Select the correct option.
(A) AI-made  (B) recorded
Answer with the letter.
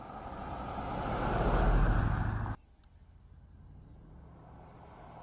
B